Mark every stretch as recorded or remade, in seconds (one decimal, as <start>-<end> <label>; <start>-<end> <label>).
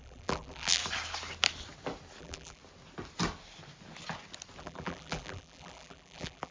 0.0-0.8 remade; 0.8-2.2 recorded; 2.2-2.6 remade; 2.6-4.6 recorded; 4.6-6.5 remade